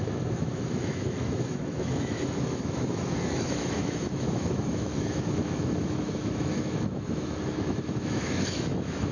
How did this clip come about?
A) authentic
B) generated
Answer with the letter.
B